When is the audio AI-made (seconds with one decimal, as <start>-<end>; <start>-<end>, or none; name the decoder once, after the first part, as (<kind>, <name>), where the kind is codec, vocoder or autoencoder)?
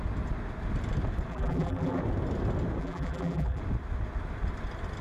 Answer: 1.3-2.0 (vocoder, BigVGAN v2); 2.8-3.6